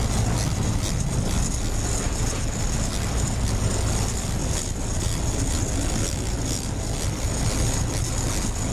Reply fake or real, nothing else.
real